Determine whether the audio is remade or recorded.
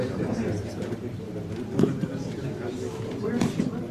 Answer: remade